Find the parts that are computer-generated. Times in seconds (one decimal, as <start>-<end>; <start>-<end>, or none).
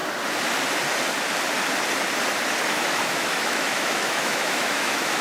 2.7-5.2